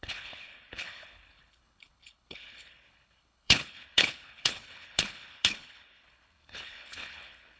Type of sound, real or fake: fake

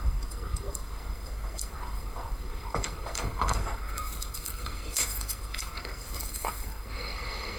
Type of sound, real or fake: fake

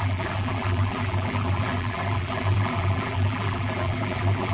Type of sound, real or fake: fake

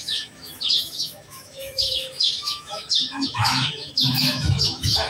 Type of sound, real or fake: fake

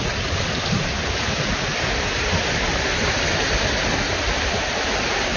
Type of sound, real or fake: fake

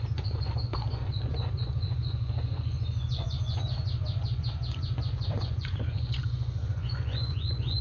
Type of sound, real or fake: fake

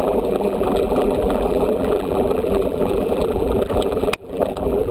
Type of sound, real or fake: fake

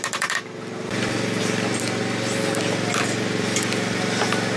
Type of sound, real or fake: real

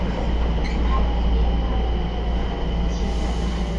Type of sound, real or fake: real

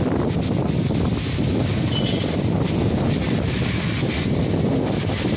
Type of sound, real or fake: real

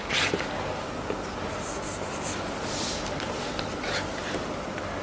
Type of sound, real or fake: real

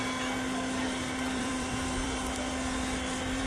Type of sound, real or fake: fake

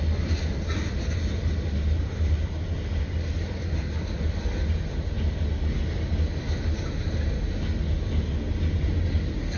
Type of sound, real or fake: real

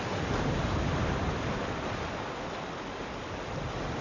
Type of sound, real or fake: real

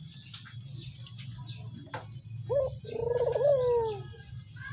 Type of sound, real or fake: real